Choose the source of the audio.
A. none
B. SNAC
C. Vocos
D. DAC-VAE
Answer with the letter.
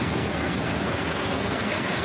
B